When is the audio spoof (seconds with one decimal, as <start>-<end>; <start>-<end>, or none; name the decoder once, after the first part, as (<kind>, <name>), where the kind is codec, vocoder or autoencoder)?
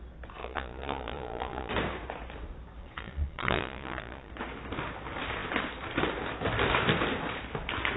0.4-1.7 (vocoder, Vocos); 2.8-4.3